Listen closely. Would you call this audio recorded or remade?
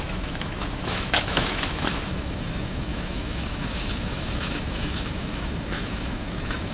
remade